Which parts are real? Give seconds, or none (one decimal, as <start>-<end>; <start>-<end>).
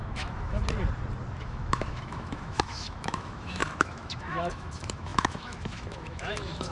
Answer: 0.6-1.4